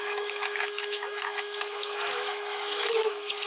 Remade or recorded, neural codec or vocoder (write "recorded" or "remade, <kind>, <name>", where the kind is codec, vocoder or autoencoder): remade, autoencoder, DAC-VAE